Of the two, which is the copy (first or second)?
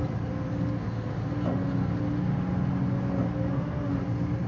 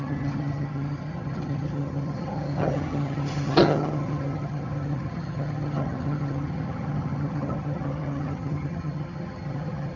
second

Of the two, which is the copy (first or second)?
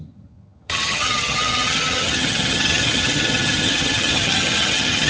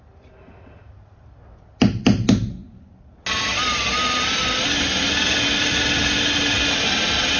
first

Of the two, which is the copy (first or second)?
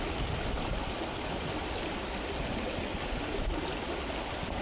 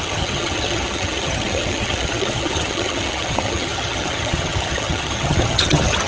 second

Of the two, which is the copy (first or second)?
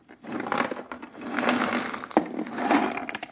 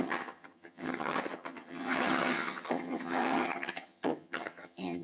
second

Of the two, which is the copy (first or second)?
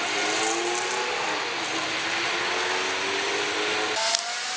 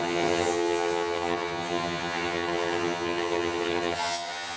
second